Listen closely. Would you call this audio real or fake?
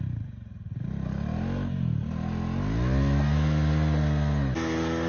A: real